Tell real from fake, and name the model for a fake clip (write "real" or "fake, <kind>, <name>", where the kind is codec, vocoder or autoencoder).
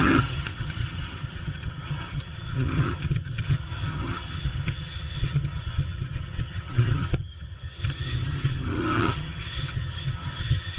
fake, vocoder, HiFi-GAN